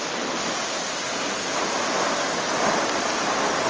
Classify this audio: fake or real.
real